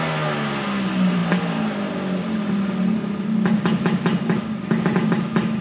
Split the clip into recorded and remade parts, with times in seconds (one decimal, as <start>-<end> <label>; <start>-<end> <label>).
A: 0.0-5.6 recorded